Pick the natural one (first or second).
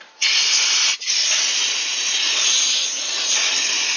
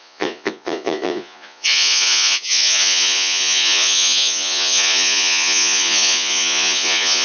first